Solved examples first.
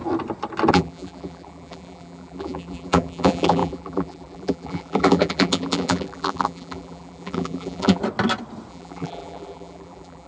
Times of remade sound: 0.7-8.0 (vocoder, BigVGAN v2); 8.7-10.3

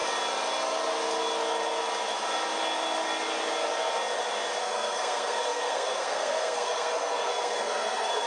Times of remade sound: 4.6-8.3 (codec, SNAC)